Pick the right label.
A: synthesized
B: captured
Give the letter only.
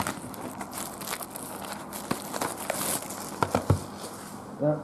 B